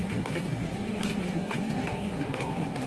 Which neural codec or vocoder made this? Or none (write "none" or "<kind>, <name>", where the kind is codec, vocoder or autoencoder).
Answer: codec, SNAC